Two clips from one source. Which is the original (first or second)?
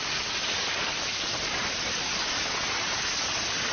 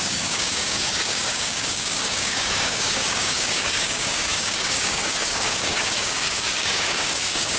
first